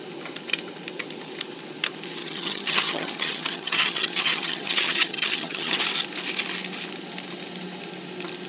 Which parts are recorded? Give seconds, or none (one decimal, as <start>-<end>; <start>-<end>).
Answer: 0.0-2.2; 5.8-8.5